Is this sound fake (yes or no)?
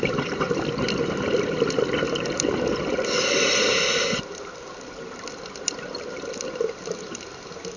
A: no